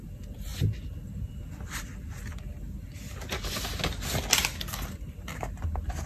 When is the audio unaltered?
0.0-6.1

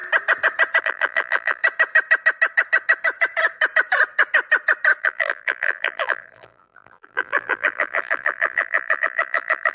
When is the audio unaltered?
0.0-0.8; 1.6-5.0

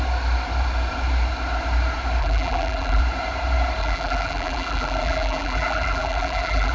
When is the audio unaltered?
0.0-2.2; 3.0-3.8

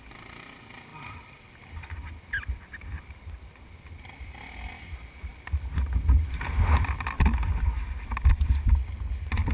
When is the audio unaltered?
0.0-0.9; 4.7-5.3

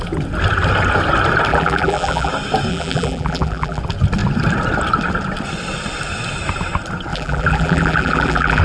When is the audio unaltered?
0.0-1.5; 2.3-2.7; 3.8-7.1

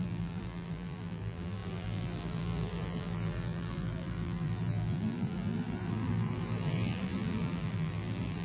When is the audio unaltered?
none

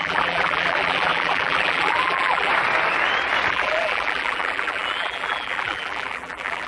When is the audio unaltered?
2.5-3.5

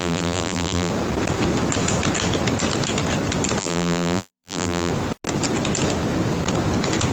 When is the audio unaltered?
0.9-3.6; 4.9-7.1